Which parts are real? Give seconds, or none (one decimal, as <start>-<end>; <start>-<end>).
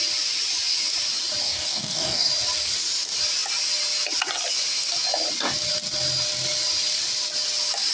0.0-1.4; 2.3-7.9